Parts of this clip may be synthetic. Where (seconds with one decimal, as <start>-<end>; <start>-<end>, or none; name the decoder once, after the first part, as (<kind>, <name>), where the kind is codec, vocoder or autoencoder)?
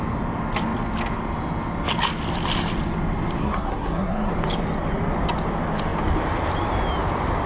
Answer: 3.4-4.3 (codec, SNAC)